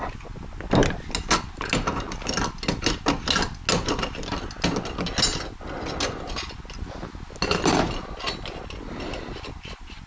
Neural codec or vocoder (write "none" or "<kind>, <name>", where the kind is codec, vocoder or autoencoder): none